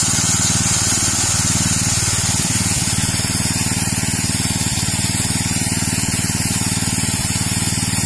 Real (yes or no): yes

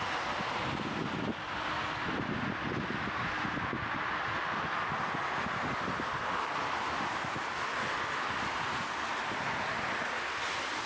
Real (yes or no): yes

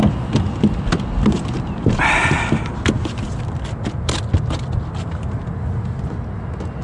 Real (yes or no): yes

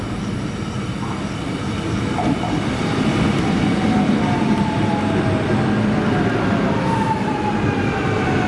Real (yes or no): yes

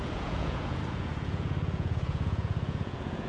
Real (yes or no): no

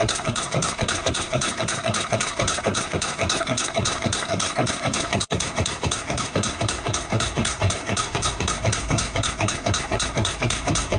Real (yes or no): no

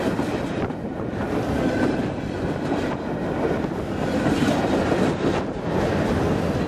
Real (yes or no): yes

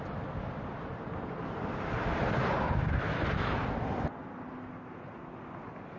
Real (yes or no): yes